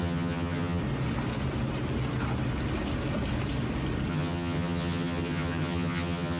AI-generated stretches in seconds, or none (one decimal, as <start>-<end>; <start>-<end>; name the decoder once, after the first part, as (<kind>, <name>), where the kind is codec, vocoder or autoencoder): 0.0-0.8 (vocoder, HiFi-GAN); 4.1-6.4